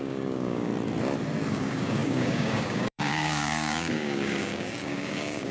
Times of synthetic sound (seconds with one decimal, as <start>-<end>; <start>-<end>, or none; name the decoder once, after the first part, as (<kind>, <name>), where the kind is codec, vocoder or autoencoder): 0.0-0.7 (codec, DAC); 1.5-5.5